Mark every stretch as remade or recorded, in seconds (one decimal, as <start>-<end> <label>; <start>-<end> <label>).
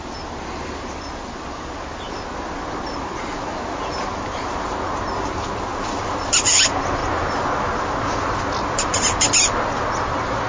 0.0-5.7 recorded; 5.7-6.2 remade; 6.2-10.5 recorded